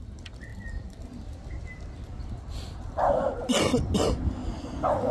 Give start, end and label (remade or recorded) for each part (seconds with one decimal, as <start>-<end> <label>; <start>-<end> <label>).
0.0-5.1 recorded